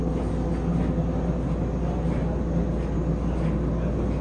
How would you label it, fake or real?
real